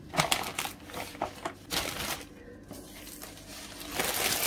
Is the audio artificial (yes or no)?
no